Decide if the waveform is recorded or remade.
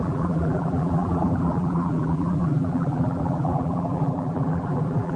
remade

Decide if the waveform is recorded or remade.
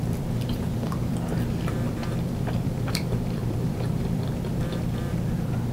remade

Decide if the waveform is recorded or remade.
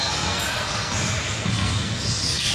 remade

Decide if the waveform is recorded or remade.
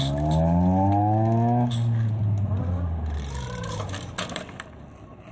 recorded